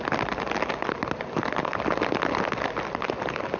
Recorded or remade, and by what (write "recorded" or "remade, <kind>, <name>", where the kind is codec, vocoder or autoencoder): recorded